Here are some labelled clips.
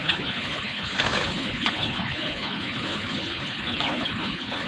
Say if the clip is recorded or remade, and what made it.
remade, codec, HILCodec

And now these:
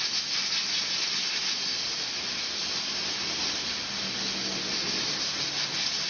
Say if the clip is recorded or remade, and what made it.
recorded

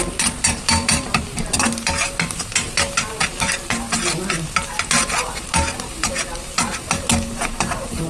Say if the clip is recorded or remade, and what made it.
recorded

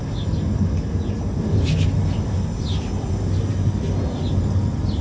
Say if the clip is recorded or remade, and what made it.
recorded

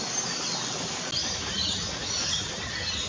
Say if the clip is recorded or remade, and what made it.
recorded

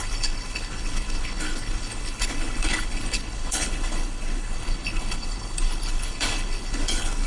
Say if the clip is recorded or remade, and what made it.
remade, codec, HILCodec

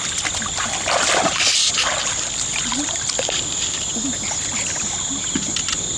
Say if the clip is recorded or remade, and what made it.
recorded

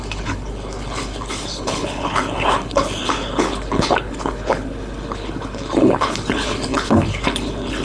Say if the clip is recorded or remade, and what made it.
remade, codec, HILCodec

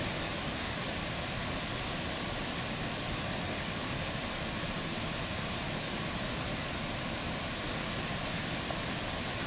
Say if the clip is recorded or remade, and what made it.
recorded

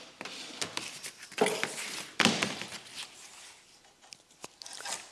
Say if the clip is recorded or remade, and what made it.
recorded